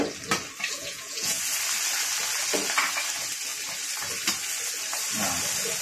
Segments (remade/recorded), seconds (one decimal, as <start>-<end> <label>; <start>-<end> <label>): 0.0-0.8 recorded; 0.8-1.4 remade; 1.4-5.8 recorded